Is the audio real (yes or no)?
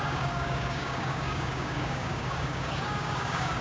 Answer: no